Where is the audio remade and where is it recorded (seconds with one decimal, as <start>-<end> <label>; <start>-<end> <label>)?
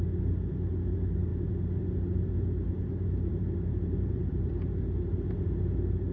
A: 0.0-3.3 recorded; 3.3-4.5 remade; 4.5-6.1 recorded